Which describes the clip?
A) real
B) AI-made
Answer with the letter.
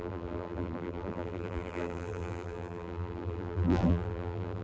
B